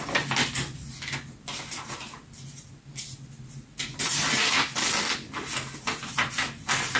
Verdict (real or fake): real